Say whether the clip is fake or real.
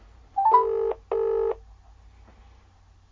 real